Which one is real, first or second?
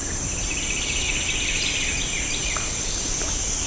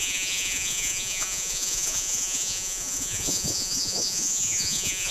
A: first